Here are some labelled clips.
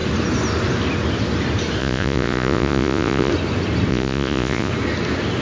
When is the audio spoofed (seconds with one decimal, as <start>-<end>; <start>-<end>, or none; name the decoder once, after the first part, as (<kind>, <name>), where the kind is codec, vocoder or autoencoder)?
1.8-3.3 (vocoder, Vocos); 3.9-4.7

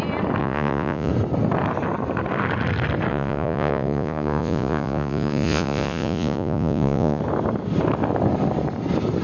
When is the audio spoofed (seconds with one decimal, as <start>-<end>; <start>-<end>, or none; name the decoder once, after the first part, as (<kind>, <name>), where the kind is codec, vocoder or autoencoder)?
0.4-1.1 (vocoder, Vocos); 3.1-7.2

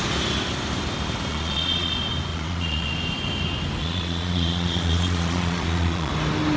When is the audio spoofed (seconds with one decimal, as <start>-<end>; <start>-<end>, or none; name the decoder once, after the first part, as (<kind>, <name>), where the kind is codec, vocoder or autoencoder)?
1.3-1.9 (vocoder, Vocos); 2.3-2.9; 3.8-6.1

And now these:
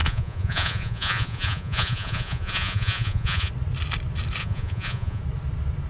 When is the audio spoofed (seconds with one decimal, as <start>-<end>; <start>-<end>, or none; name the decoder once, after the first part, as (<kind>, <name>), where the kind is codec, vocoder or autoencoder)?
0.0-3.5 (vocoder, Vocos); 4.4-5.2

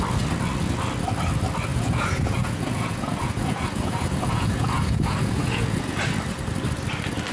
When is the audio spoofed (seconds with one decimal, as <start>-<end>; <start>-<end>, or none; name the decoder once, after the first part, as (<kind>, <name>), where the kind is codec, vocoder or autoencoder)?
1.7-6.0 (vocoder, Vocos)